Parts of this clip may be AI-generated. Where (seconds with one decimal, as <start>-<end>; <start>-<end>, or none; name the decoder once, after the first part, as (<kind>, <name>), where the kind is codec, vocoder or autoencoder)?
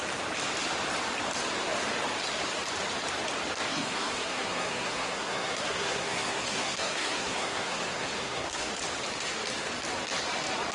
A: 3.7-8.7 (codec, SNAC)